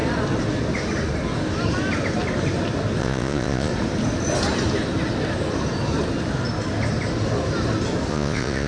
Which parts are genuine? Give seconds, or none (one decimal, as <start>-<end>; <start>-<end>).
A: 0.0-3.0; 3.7-8.1